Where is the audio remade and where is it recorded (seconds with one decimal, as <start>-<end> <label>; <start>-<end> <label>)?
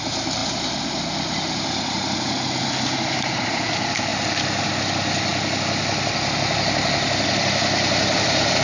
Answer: 0.0-4.1 remade; 4.1-4.6 recorded; 4.6-5.3 remade; 5.3-7.3 recorded; 7.3-8.6 remade